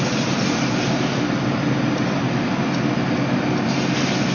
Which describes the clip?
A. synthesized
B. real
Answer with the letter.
B